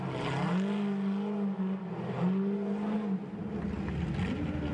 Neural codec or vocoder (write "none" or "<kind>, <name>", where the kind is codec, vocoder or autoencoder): none